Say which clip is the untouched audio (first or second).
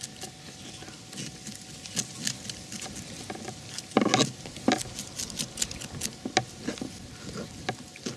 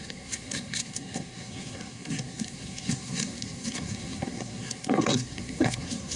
first